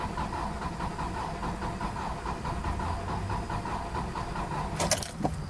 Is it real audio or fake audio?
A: real